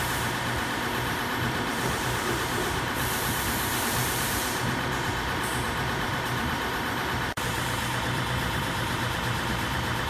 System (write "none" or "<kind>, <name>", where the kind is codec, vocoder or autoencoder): vocoder, BigVGAN v2